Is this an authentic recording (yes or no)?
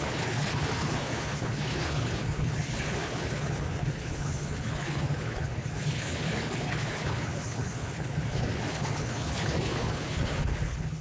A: no